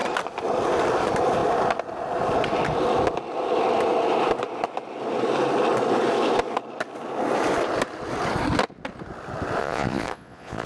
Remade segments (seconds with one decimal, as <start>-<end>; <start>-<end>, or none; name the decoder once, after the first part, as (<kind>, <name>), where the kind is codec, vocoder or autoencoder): 9.6-10.7 (vocoder, Vocos)